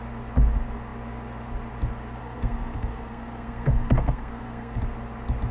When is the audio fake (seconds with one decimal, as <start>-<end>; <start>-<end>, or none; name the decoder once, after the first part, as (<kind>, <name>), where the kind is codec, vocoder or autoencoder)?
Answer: 2.2-4.8 (codec, SNAC)